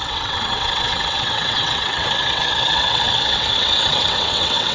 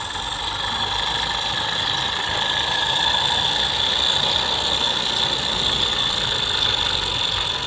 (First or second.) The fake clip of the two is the first